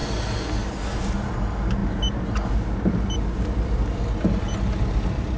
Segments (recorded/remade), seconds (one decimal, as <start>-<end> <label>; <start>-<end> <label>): 0.0-5.4 recorded